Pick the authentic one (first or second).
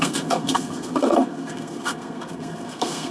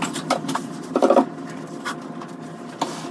second